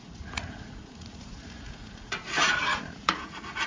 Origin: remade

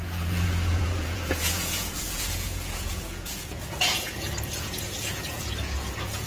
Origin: remade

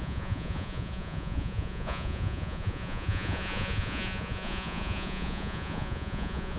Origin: remade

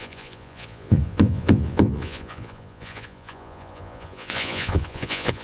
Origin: remade